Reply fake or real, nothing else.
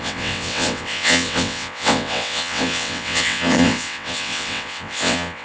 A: fake